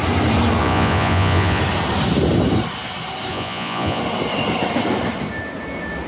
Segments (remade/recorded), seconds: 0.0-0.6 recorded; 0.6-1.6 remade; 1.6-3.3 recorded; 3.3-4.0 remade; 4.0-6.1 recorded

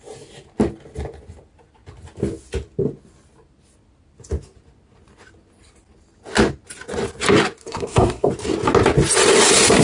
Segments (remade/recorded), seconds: 0.0-7.6 recorded; 7.6-8.3 remade; 8.3-9.8 recorded

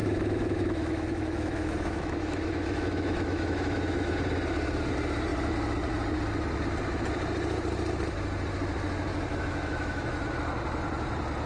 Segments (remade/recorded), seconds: 0.0-4.1 remade; 4.1-9.3 recorded; 9.3-10.2 remade; 10.2-11.5 recorded

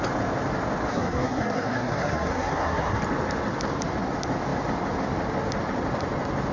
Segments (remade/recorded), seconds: 0.0-0.9 recorded; 0.9-3.0 remade; 3.0-6.5 recorded

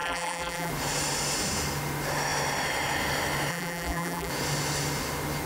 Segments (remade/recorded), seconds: 0.0-0.7 remade; 0.7-3.5 recorded; 3.5-4.3 remade; 4.3-5.5 recorded

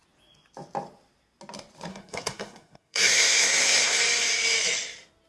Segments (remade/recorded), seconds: 0.0-1.9 recorded; 1.9-4.0 remade; 4.0-5.3 recorded